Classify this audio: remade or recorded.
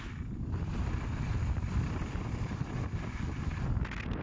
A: recorded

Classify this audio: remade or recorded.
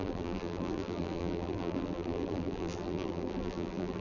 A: remade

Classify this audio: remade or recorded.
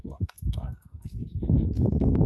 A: remade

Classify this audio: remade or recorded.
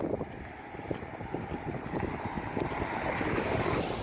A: recorded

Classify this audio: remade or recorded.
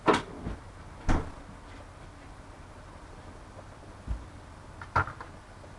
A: recorded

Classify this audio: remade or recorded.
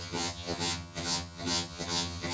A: remade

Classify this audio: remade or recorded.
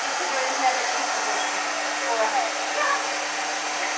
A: recorded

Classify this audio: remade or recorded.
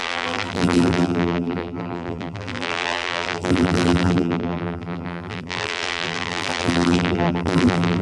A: remade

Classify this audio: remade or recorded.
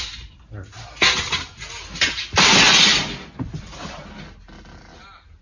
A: recorded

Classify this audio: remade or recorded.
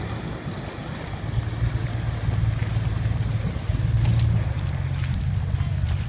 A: recorded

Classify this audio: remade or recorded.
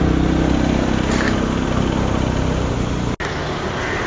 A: recorded